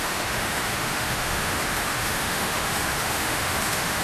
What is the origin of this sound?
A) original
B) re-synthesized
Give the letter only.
B